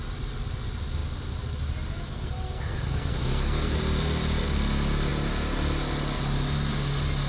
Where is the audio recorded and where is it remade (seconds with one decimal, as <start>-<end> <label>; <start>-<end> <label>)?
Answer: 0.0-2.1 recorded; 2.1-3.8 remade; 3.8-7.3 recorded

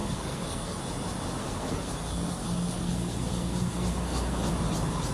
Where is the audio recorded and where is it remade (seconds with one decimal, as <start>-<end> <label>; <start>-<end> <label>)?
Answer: 0.0-0.8 remade; 0.8-1.4 recorded; 1.4-4.5 remade; 4.5-5.1 recorded

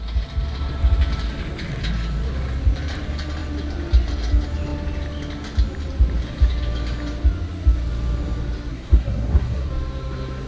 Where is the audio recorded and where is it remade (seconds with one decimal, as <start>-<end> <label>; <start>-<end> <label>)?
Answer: 0.0-8.7 recorded; 8.7-9.7 remade; 9.7-10.5 recorded